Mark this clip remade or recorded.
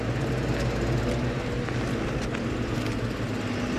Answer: recorded